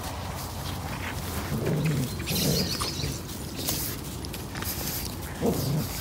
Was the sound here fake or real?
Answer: real